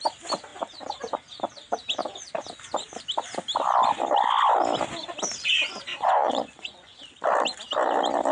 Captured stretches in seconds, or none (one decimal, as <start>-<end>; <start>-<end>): 0.0-5.9; 7.0-8.3